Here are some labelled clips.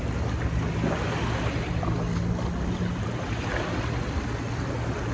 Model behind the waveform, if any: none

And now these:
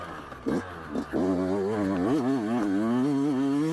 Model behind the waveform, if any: none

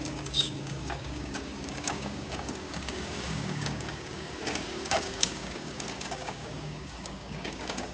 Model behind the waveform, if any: codec, DAC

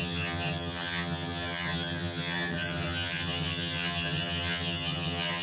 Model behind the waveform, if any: vocoder, HiFi-GAN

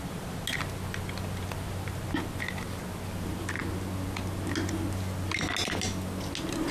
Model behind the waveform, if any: none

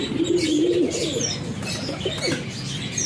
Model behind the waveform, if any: none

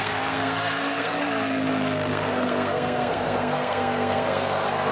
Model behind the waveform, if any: codec, SNAC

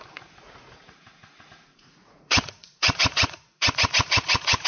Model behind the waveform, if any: vocoder, Vocos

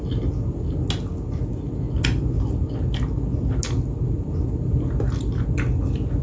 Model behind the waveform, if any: none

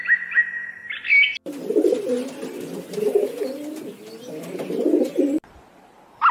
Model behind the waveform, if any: none